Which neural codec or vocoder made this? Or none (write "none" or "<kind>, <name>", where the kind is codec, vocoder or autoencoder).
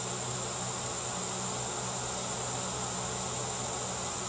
none